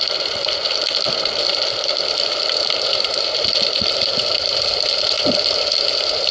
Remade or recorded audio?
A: remade